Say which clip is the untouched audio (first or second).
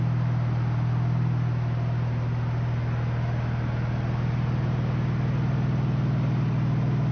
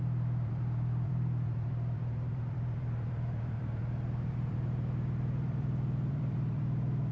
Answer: first